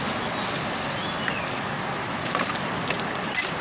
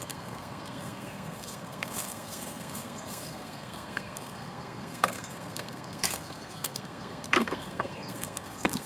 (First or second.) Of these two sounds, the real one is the first